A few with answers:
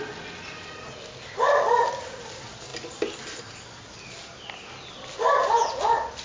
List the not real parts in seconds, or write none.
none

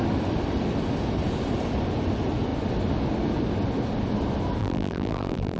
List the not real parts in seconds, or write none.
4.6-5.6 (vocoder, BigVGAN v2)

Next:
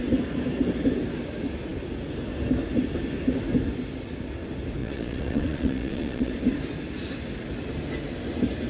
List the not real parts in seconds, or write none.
4.8-6.3 (vocoder, Vocos)